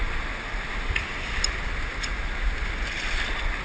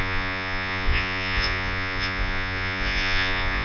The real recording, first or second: first